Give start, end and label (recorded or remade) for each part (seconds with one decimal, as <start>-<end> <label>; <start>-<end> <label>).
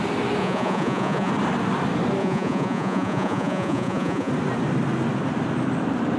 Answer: 0.0-0.4 recorded; 0.4-1.3 remade; 1.3-2.2 recorded; 2.2-4.3 remade; 4.3-6.2 recorded